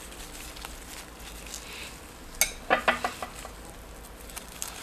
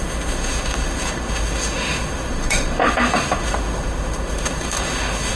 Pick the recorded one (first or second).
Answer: first